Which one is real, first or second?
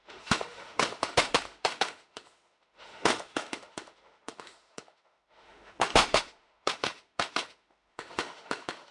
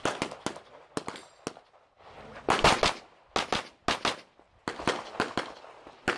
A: second